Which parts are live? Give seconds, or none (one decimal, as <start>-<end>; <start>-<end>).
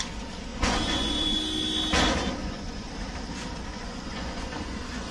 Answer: 0.0-0.5; 1.4-2.4; 2.9-3.7